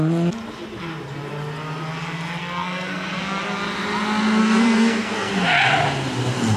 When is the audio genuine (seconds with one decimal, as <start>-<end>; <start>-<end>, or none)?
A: 0.0-2.4; 3.4-4.4; 5.3-6.6